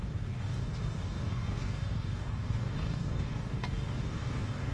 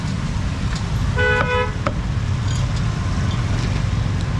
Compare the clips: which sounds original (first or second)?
second